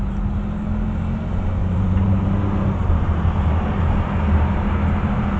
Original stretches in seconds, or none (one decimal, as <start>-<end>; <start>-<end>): 0.0-1.6; 2.2-2.8; 4.7-5.4